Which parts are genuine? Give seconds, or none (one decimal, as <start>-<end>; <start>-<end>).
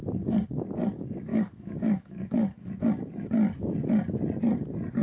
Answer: 0.0-1.3; 2.7-5.0